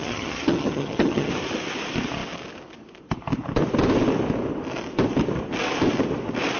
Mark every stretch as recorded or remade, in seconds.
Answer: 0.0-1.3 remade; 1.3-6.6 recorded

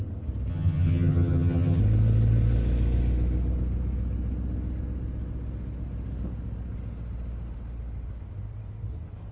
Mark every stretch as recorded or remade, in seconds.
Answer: 0.0-0.5 recorded; 0.5-1.8 remade; 1.8-9.3 recorded

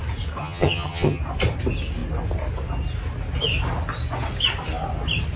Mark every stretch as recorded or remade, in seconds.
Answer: 0.0-0.4 recorded; 0.4-1.2 remade; 1.2-5.4 recorded